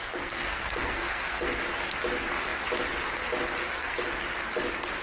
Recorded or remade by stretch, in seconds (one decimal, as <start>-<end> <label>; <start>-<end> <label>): 0.0-1.6 remade; 1.6-3.6 recorded; 3.6-4.1 remade; 4.1-5.0 recorded